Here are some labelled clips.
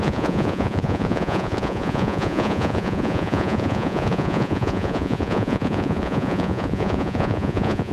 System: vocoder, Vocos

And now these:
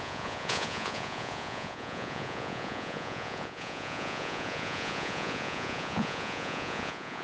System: vocoder, Vocos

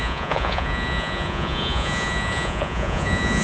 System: vocoder, Vocos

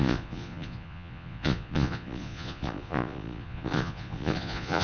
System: vocoder, Vocos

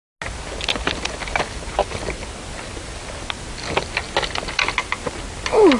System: none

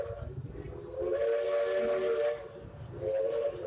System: none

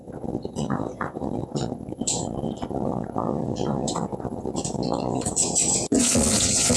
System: vocoder, Vocos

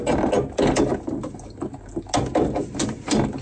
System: none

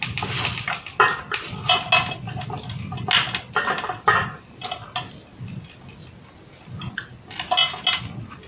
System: none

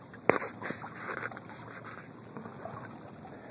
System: none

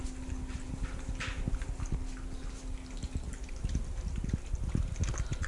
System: none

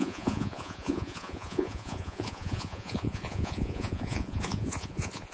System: vocoder, Vocos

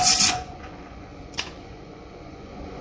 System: vocoder, Vocos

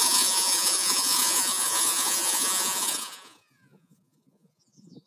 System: vocoder, Vocos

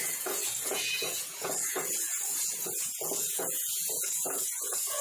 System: vocoder, Vocos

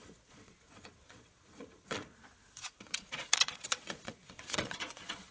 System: vocoder, Vocos